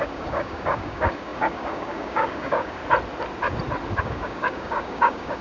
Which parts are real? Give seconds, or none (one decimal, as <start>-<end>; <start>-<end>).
2.8-4.0